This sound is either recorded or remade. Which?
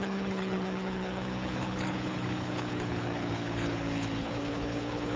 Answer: remade